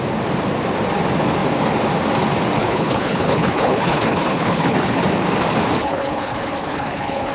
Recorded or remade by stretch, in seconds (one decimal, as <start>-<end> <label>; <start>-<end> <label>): 0.0-2.6 recorded; 2.6-5.0 remade; 5.0-5.8 recorded; 5.8-7.3 remade